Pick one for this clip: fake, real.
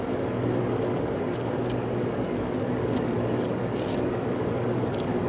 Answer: fake